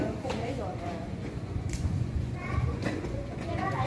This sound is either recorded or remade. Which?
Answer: remade